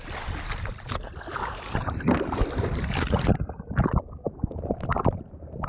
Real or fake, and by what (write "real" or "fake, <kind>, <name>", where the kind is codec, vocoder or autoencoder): real